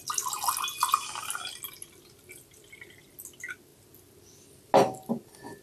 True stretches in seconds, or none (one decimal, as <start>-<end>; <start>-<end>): 0.0-5.6